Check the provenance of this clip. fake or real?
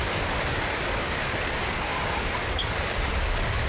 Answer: fake